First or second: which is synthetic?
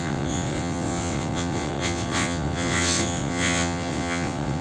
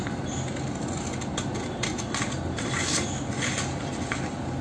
first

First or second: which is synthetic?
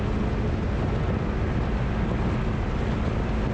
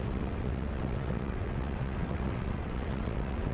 second